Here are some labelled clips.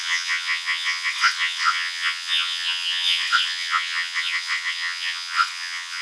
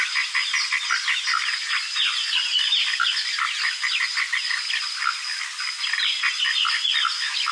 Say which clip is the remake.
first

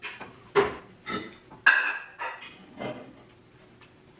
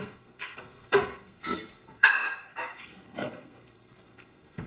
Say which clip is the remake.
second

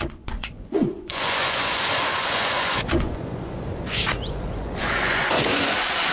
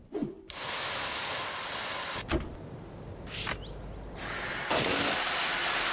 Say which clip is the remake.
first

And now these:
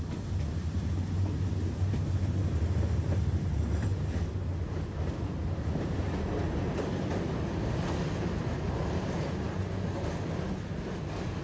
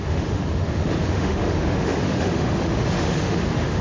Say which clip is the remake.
second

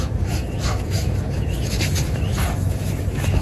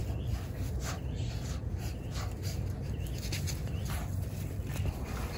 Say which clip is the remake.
first